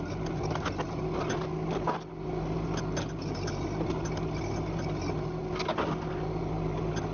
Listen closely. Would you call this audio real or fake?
real